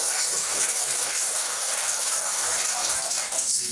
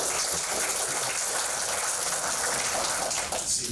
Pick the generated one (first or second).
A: first